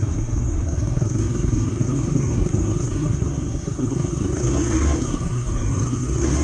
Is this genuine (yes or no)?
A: no